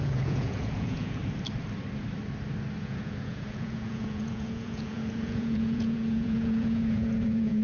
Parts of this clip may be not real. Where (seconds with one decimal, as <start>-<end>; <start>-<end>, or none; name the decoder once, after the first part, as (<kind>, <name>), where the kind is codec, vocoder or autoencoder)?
0.0-1.2 (vocoder, Vocos); 2.8-7.6